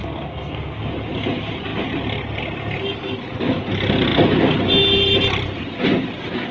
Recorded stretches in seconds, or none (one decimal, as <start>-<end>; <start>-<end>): 0.9-6.5